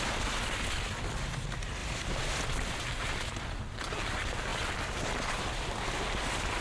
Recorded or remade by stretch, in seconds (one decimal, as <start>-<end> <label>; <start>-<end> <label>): 0.0-1.8 recorded; 1.8-2.4 remade; 2.4-4.5 recorded; 4.5-5.5 remade; 5.5-6.6 recorded